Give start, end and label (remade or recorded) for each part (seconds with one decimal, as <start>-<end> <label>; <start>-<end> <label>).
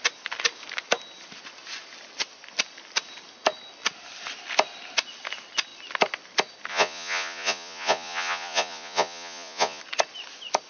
0.0-6.7 recorded; 6.7-9.8 remade; 9.8-10.7 recorded